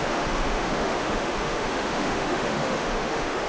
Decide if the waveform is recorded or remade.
remade